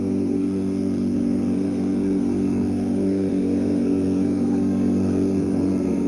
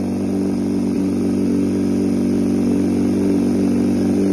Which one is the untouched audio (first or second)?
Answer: second